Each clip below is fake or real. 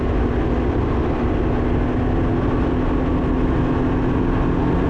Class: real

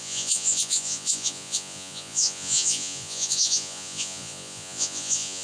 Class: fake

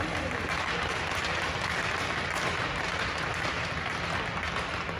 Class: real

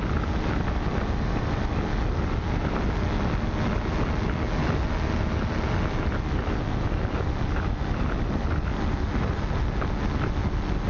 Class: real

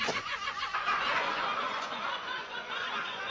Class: fake